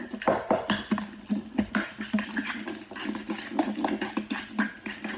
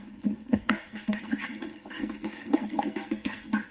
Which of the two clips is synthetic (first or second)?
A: second